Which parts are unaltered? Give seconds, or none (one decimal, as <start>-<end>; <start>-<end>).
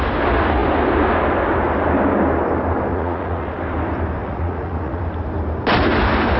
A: 0.0-2.9; 3.6-4.2; 5.0-6.4